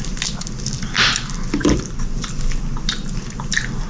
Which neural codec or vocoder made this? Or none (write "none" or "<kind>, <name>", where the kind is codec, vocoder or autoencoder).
none